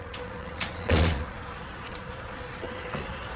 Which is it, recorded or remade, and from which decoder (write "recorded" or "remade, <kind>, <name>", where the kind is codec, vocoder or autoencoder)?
remade, vocoder, Vocos